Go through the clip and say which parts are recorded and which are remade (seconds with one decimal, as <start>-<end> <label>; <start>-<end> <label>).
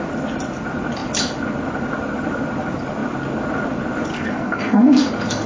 0.0-4.1 recorded; 4.1-5.0 remade; 5.0-5.5 recorded